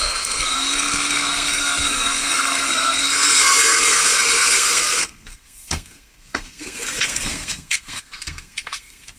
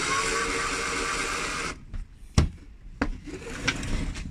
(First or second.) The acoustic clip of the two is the second